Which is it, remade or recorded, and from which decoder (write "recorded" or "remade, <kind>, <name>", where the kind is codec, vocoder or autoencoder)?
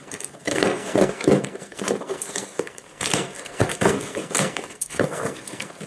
remade, codec, SNAC